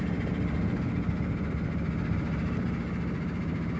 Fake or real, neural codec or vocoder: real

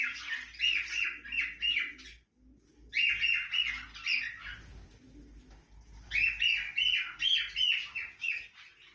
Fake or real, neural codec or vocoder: real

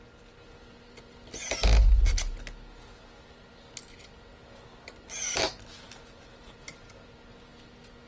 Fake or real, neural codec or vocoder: real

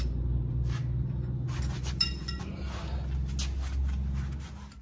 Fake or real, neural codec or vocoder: real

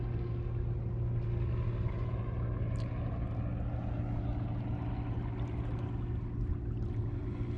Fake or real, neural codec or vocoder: real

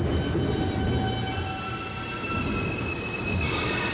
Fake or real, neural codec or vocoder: real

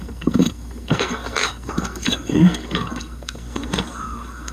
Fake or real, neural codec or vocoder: fake, codec, SNAC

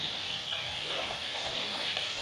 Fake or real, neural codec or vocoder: fake, codec, DAC